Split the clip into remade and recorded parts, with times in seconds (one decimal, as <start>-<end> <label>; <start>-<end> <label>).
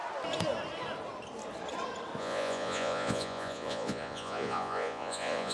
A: 0.0-2.2 recorded; 2.2-5.5 remade